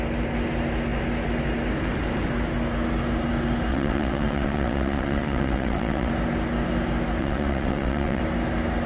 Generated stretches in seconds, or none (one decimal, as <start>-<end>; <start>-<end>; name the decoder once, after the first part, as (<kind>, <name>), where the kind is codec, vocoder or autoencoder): 3.7-6.1 (vocoder, WaveNeXt); 7.2-8.2